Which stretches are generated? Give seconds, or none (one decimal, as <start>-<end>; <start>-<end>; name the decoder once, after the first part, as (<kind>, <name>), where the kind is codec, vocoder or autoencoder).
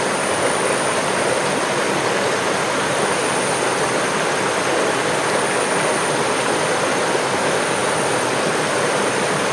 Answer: none